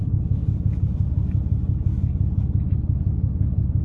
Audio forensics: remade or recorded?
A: recorded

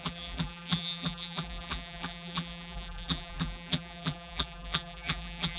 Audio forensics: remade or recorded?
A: remade